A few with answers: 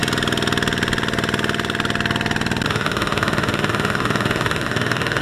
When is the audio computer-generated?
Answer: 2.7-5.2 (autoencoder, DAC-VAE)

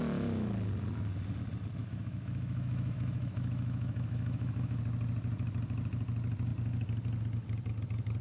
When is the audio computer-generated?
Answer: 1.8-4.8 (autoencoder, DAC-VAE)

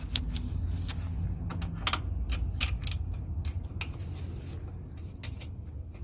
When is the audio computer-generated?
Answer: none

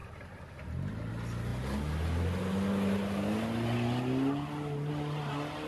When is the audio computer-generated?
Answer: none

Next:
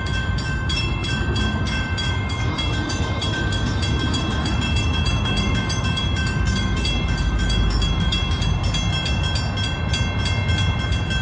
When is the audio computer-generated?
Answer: 0.0-8.6 (autoencoder, DAC-VAE)

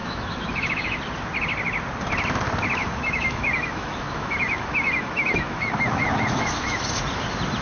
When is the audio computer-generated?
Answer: 0.0-1.0 (autoencoder, DAC-VAE); 2.8-6.8